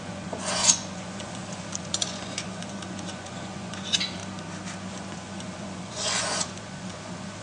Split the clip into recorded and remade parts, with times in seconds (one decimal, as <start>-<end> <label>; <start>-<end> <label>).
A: 0.0-4.2 remade; 4.2-4.9 recorded; 4.9-7.4 remade